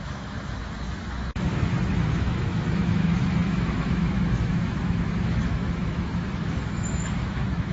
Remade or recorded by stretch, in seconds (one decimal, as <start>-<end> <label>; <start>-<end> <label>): 0.0-7.7 remade